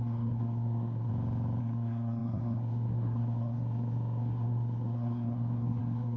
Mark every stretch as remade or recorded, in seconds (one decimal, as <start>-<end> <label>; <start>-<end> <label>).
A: 0.0-1.1 remade; 1.1-1.6 recorded; 1.6-6.2 remade